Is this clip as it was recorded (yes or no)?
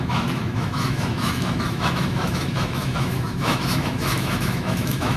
no